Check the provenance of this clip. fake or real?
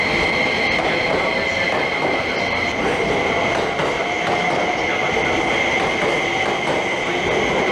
real